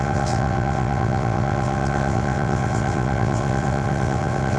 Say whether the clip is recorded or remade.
remade